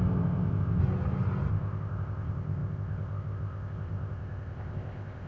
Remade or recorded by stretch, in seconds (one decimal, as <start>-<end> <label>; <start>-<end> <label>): 0.0-0.8 remade; 0.8-1.5 recorded; 1.5-5.3 remade